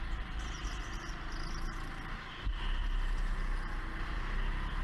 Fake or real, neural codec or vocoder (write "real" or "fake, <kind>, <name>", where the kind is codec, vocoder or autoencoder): real